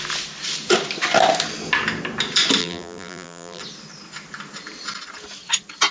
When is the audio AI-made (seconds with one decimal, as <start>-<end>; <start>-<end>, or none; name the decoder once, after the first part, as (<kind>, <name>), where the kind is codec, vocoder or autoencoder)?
2.6-3.6 (vocoder, BigVGAN v2)